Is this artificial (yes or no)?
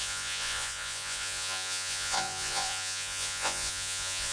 yes